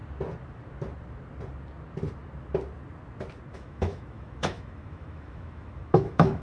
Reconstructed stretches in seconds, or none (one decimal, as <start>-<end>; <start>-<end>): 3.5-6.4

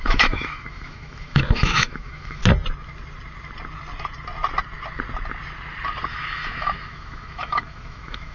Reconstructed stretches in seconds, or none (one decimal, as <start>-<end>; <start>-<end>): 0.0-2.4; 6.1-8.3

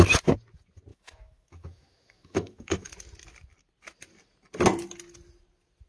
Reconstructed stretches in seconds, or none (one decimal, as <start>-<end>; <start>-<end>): 0.9-2.9

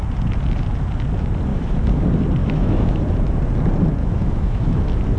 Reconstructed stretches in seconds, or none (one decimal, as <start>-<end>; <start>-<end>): 1.5-2.0; 2.4-3.0; 4.0-4.8

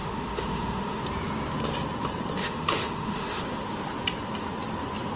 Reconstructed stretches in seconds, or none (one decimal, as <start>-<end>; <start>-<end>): 0.0-1.0; 2.4-3.4

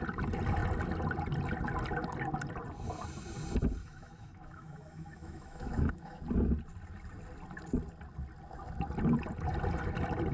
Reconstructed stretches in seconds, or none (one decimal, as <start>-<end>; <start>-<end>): 3.8-6.2

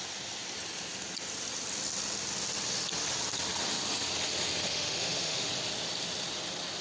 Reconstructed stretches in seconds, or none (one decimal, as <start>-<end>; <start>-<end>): 4.7-5.5

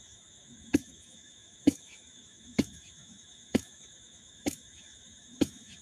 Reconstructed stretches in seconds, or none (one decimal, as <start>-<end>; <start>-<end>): 0.0-5.8